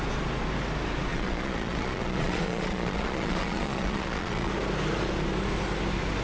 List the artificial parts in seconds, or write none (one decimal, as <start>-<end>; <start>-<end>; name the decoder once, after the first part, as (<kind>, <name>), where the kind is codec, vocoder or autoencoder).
1.1-4.5 (vocoder, Vocos)